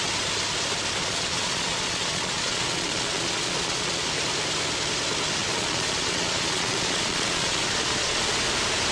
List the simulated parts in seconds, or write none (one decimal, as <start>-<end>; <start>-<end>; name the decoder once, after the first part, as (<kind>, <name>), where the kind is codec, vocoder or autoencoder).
1.0-4.1 (vocoder, Vocos); 5.4-8.2